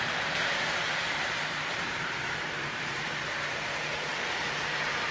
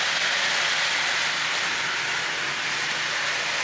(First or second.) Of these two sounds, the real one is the second